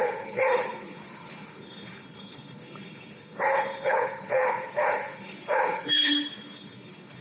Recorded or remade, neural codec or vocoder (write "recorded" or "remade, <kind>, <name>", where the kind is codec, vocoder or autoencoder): remade, codec, HILCodec